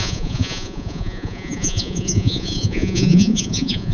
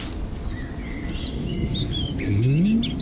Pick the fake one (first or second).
first